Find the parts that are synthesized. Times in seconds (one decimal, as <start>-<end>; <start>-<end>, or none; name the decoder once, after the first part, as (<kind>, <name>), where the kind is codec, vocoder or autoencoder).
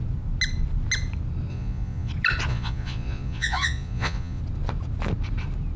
1.5-2.1 (vocoder, Vocos); 2.5-4.4